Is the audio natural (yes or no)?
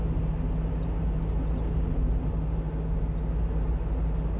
yes